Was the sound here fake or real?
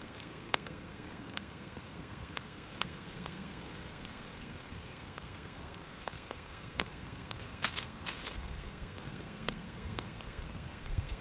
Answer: fake